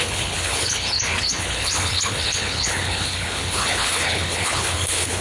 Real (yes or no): no